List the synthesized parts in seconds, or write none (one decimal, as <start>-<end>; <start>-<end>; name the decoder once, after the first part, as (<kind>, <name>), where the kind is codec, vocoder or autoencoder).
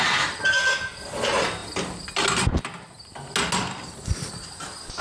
none